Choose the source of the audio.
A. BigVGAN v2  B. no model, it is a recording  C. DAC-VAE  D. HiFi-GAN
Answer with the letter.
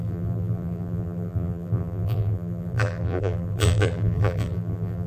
A